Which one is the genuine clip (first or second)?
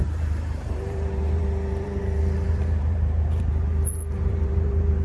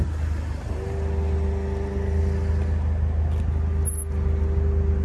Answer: second